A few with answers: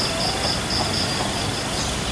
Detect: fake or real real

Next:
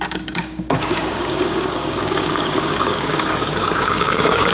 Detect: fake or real fake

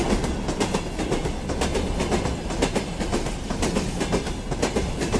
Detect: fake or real real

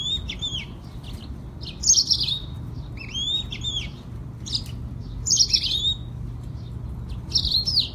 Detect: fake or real real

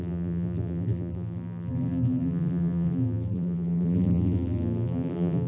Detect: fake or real fake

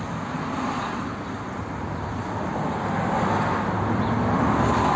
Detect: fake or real real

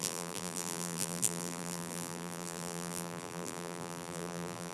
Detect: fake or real fake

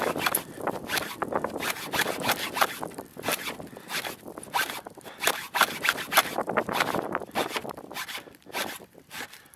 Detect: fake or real fake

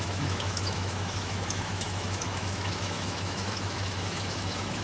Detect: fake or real fake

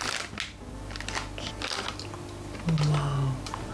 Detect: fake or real real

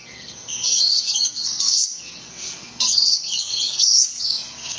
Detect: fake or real fake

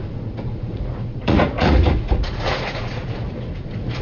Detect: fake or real fake